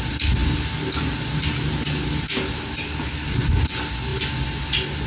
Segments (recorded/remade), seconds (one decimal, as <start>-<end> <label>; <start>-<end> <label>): 0.0-5.1 recorded